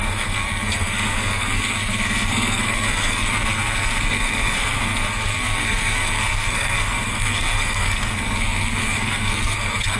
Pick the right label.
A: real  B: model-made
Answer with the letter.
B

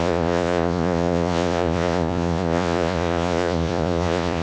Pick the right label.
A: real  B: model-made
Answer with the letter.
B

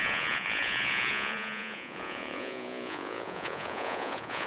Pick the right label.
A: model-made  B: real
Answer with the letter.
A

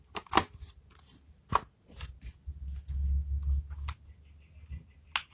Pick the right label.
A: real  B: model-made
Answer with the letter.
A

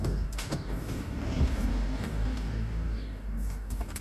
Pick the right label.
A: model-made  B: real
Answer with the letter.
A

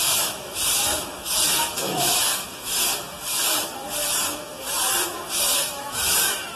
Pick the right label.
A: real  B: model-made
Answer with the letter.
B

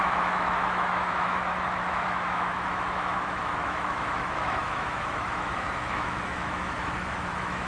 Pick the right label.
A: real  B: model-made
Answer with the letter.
B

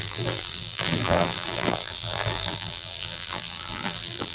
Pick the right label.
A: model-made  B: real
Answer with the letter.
A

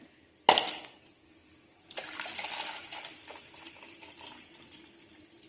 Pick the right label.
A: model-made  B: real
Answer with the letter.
A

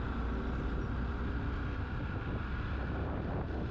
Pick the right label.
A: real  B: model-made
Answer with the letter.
A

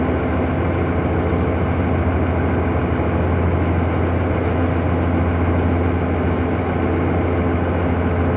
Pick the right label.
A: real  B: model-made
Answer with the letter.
A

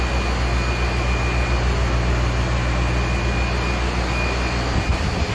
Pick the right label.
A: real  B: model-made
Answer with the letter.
A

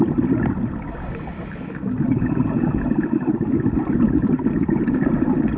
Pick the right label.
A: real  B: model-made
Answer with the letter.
A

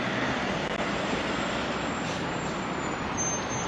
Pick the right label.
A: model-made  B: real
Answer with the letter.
B